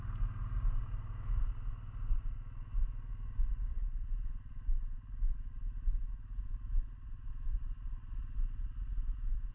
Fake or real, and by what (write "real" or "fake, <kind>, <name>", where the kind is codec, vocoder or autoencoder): real